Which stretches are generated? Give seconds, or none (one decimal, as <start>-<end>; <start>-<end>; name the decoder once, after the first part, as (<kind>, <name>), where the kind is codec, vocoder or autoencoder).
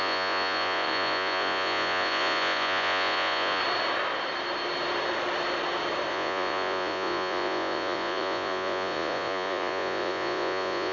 0.0-3.6 (vocoder, Vocos); 6.1-10.9